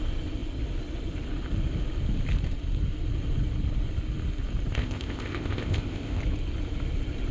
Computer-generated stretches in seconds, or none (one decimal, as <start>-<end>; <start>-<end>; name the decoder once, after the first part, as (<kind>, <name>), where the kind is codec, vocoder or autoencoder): 4.7-6.2 (codec, ZipCodec)